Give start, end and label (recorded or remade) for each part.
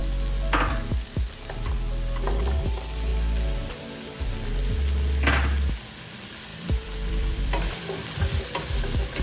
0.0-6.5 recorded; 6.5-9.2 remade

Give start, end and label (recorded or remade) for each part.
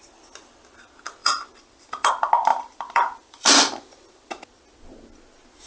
0.0-1.2 recorded; 1.2-2.1 remade; 2.1-2.5 recorded; 2.5-4.3 remade; 4.3-5.7 recorded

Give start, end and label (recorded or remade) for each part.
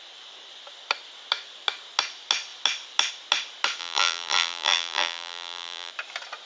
0.0-3.8 recorded; 3.8-5.9 remade; 5.9-6.5 recorded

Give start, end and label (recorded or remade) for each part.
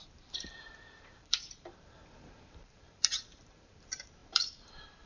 0.0-5.1 remade